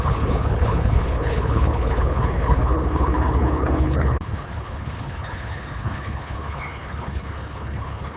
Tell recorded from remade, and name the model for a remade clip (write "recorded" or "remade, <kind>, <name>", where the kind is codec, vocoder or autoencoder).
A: remade, codec, HILCodec